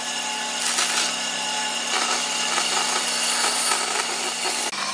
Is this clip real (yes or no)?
yes